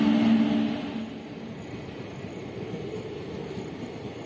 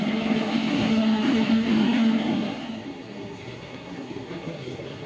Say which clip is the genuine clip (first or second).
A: first